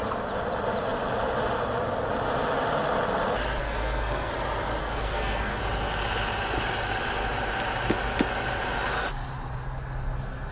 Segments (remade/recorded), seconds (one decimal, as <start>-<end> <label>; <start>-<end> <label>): 0.0-3.6 recorded; 3.6-4.3 remade; 4.3-4.8 recorded; 4.8-5.6 remade; 5.6-10.5 recorded